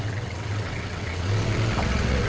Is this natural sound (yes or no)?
no